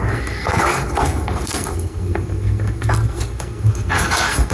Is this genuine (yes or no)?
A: no